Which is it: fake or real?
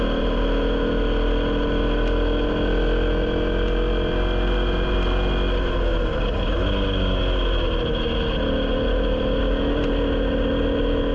real